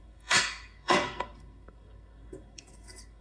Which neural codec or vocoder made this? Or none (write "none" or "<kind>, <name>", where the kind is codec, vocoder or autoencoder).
codec, SNAC